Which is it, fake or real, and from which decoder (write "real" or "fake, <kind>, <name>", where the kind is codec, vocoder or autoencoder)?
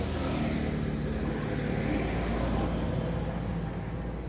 real